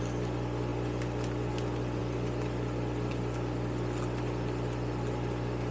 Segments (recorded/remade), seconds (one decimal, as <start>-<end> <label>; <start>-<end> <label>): 0.0-5.7 recorded